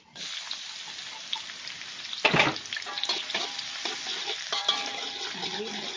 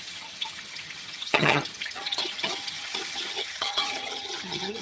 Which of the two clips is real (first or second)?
first